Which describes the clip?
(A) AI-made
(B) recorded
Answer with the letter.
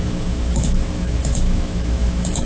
A